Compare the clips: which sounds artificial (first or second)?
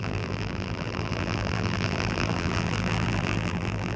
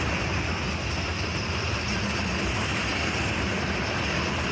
first